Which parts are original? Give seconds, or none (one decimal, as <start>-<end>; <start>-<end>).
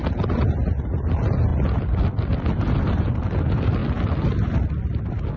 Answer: 0.0-5.4